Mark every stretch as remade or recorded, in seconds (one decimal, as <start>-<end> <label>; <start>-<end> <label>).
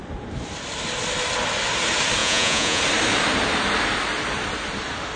0.0-2.2 recorded; 2.2-2.8 remade; 2.8-5.2 recorded